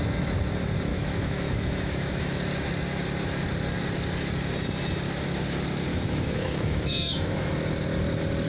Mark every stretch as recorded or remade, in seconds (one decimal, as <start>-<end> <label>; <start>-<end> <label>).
0.0-0.9 recorded; 0.9-2.4 remade; 2.4-5.9 recorded; 5.9-7.5 remade; 7.5-8.5 recorded